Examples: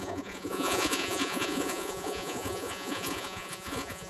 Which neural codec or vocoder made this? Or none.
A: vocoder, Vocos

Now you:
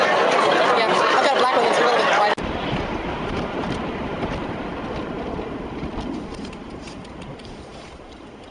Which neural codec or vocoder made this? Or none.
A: none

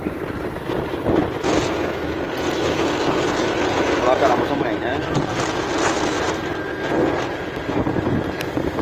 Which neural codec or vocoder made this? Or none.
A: none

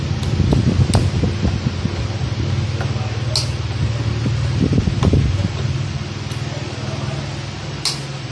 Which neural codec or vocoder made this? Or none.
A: none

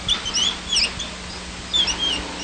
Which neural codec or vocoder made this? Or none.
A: none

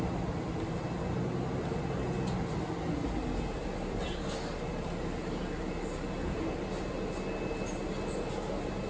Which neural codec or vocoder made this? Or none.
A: none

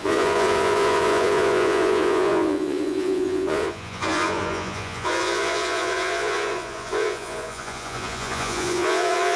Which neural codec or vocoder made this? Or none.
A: vocoder, Vocos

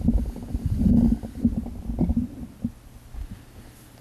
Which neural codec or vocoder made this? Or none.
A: none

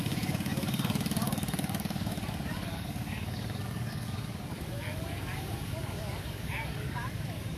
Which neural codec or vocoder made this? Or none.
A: codec, DAC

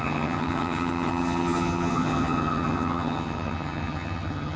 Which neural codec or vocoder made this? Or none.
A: vocoder, HiFi-GAN